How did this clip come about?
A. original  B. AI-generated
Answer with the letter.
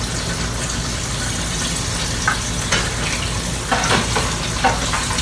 A